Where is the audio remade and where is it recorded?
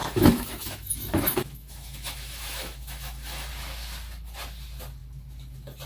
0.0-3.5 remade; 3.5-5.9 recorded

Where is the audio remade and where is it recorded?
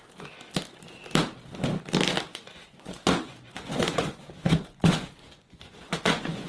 0.0-2.3 recorded; 2.3-6.5 remade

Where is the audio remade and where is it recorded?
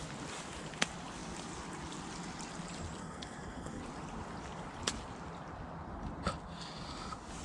0.0-3.0 recorded; 3.0-3.8 remade; 3.8-7.4 recorded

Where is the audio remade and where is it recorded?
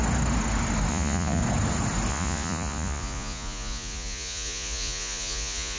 0.0-0.9 recorded; 0.9-1.4 remade; 1.4-2.1 recorded; 2.1-5.8 remade